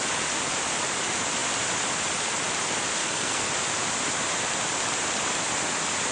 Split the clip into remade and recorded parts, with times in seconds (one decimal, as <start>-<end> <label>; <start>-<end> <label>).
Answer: 0.0-3.0 recorded; 3.0-3.5 remade; 3.5-6.1 recorded